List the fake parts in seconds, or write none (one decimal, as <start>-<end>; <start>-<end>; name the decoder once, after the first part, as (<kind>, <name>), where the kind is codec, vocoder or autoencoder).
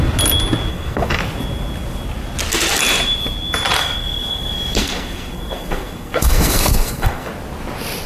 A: 0.7-1.2 (codec, SNAC); 3.8-7.3